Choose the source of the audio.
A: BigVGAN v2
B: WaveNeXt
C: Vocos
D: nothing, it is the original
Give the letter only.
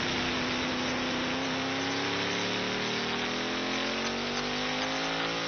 D